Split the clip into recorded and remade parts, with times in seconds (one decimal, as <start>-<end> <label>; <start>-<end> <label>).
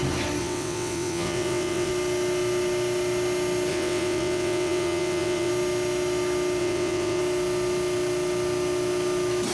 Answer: 0.0-0.4 recorded; 0.4-1.9 remade; 1.9-3.7 recorded; 3.7-5.5 remade; 5.5-6.6 recorded; 6.6-7.2 remade; 7.2-9.5 recorded